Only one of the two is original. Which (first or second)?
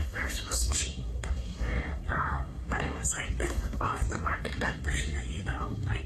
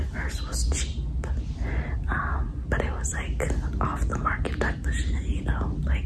second